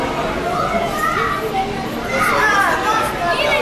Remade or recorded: recorded